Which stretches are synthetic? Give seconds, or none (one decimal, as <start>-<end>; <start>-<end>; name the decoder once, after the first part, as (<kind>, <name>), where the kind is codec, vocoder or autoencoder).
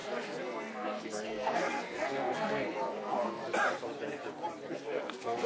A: 0.0-3.4 (codec, SNAC); 4.7-5.5